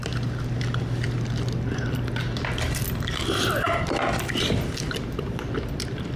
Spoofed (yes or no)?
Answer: no